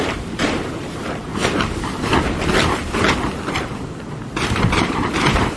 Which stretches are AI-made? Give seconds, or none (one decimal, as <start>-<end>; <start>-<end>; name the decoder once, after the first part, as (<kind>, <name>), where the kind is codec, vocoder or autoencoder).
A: 0.0-1.3 (vocoder, BigVGAN v2); 4.7-5.6